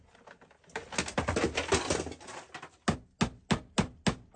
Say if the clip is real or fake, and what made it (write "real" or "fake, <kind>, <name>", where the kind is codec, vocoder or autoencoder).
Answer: real